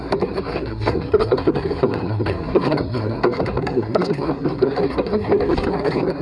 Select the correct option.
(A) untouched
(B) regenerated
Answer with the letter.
B